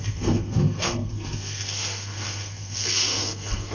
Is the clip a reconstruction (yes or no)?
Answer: yes